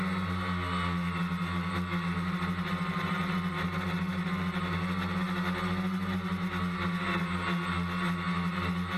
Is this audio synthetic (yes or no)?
no